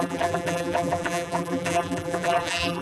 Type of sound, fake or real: fake